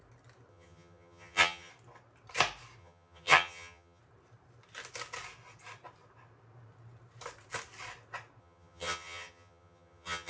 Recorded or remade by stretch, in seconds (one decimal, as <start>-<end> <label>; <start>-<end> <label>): 0.0-0.5 recorded; 0.5-1.7 remade; 1.7-2.8 recorded; 2.8-4.0 remade; 4.0-8.4 recorded; 8.4-10.3 remade